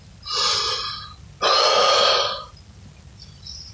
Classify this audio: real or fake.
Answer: real